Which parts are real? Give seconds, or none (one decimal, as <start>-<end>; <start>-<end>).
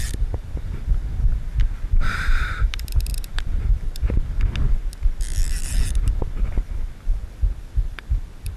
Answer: 3.1-4.7